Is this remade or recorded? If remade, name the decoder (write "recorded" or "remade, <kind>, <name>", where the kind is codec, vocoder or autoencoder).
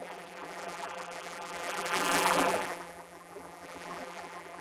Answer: remade, vocoder, BigVGAN v2